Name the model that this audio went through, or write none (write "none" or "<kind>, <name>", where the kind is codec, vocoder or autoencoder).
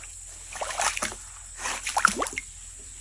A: none